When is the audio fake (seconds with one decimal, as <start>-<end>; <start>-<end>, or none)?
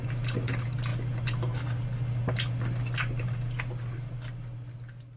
none